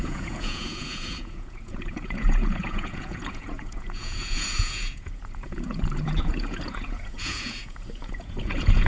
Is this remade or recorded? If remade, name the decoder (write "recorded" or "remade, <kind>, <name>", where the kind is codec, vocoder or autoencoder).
remade, vocoder, Vocos